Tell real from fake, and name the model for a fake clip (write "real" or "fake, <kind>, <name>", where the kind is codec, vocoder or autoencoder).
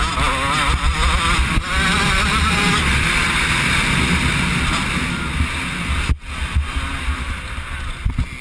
real